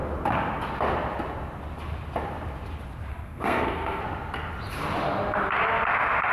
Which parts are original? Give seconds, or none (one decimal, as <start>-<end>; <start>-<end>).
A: 0.0-3.1; 4.0-6.3

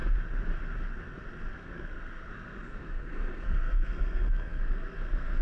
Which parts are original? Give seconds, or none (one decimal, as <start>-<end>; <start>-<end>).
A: 0.0-1.5

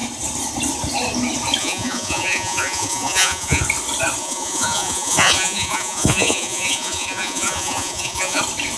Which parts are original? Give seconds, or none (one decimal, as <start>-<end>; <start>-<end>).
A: 0.0-1.6; 3.6-4.2; 8.4-8.8

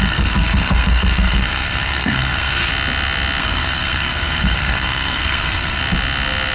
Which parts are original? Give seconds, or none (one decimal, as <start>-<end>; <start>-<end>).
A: 2.7-3.4; 5.8-6.5